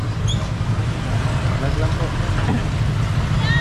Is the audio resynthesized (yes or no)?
no